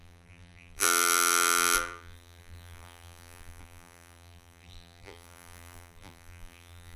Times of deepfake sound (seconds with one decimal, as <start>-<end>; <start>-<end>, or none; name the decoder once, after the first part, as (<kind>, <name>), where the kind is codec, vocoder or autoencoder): 0.0-7.0 (vocoder, BigVGAN v2)